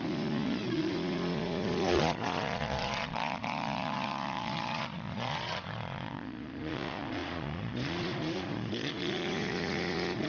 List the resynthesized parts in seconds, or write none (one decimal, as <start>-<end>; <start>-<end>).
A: 0.0-10.3